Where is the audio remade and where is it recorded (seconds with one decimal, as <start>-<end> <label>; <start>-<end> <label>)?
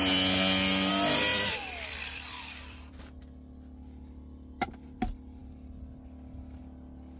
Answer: 0.0-1.3 recorded; 1.3-3.0 remade; 3.0-7.2 recorded